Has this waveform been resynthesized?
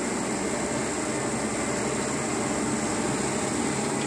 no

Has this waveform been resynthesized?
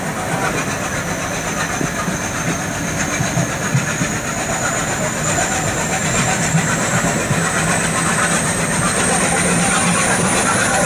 no